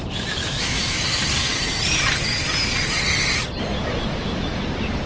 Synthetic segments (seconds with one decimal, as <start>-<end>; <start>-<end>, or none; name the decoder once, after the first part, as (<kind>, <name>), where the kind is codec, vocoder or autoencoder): 0.4-1.0 (autoencoder, DAC-VAE); 3.8-4.6